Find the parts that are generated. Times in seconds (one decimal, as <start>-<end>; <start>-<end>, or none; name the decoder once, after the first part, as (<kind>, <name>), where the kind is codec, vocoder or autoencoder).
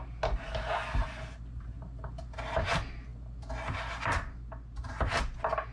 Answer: none